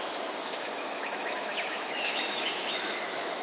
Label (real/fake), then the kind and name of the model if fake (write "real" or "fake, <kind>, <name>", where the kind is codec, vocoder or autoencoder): fake, autoencoder, DAC-VAE